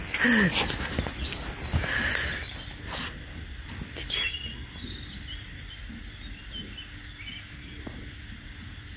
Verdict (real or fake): real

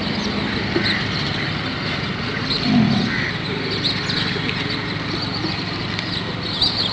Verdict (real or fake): real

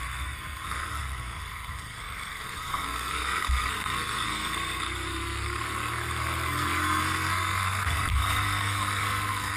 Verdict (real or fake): fake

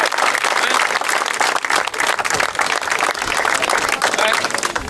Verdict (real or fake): real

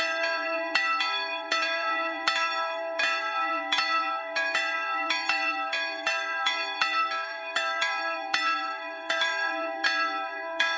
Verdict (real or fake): fake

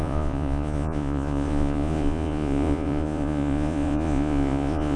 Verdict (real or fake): fake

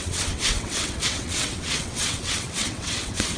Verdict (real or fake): fake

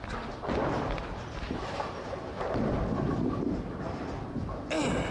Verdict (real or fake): real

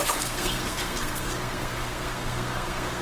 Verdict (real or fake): fake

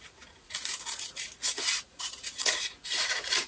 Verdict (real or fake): fake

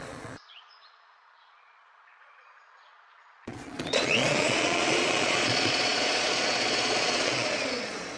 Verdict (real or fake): fake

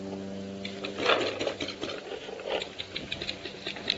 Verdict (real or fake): real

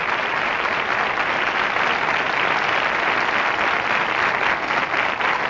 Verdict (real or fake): real